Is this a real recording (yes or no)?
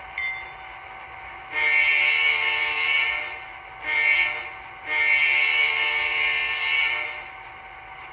yes